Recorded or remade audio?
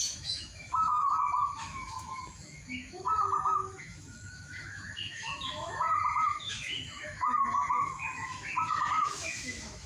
remade